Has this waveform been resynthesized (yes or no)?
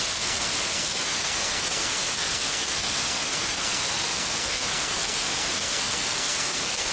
yes